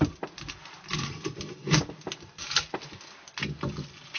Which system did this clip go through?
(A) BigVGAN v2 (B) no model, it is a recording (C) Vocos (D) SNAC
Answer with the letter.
B